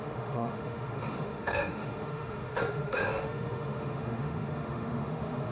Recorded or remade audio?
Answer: remade